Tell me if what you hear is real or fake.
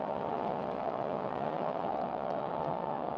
fake